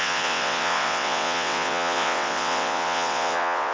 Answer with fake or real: fake